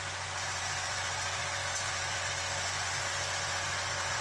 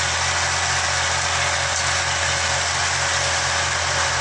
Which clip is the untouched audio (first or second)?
second